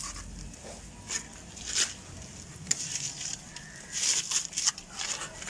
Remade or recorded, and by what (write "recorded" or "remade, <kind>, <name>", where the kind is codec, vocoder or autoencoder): recorded